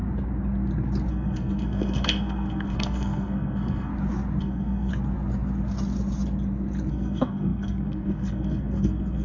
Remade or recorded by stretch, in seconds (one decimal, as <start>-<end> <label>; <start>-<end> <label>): 0.0-1.1 recorded; 1.1-3.9 remade; 3.9-4.4 recorded; 4.4-4.9 remade; 4.9-6.9 recorded; 6.9-9.2 remade